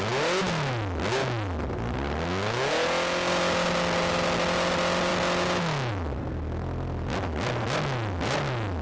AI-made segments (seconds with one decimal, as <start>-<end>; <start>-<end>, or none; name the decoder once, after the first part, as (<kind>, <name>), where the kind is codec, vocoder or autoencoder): none